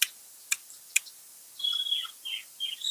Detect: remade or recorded recorded